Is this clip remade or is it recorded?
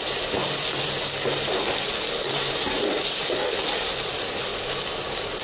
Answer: recorded